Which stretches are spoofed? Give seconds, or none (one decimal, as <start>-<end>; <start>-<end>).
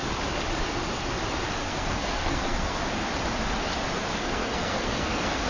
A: 1.6-2.8; 4.1-5.5